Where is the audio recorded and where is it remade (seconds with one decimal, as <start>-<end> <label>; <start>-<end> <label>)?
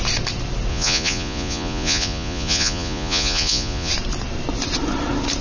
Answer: 0.0-0.7 recorded; 0.7-3.9 remade; 3.9-5.4 recorded